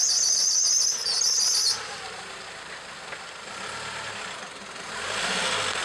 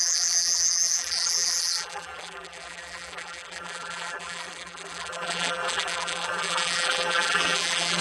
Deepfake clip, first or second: second